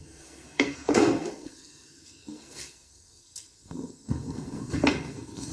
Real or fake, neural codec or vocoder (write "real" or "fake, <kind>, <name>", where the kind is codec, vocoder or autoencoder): fake, codec, SNAC